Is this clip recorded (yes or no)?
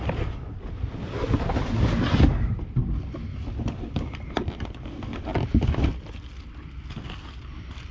yes